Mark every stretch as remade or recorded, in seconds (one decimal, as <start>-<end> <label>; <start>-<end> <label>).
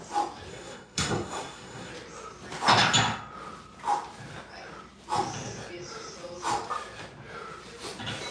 0.0-0.5 recorded; 0.5-1.9 remade; 1.9-8.3 recorded